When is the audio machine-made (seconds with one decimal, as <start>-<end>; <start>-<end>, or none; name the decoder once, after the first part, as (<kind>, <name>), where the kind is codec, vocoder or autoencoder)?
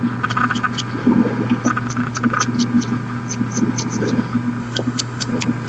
4.6-5.3 (autoencoder, DAC-VAE)